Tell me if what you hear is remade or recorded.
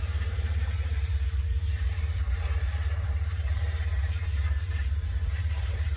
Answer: remade